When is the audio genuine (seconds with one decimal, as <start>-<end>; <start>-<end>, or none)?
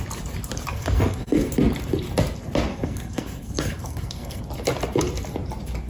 0.0-0.7; 1.5-2.7; 4.4-5.9